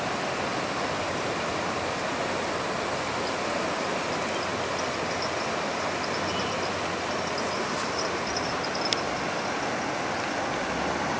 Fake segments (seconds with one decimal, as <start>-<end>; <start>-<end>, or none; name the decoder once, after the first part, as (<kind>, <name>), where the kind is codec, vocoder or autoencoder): none